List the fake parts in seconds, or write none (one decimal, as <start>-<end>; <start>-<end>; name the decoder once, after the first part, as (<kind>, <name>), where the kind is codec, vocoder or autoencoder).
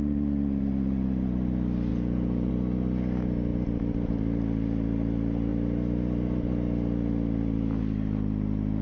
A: 1.9-2.5 (vocoder, Vocos)